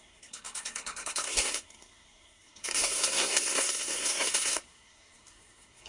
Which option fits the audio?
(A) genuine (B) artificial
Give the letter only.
B